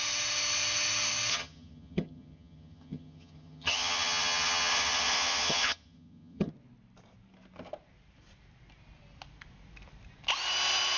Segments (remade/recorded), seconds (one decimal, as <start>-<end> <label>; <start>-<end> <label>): 0.0-1.3 recorded; 1.3-6.5 remade; 6.5-11.0 recorded